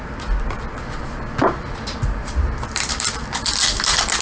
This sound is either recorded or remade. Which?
remade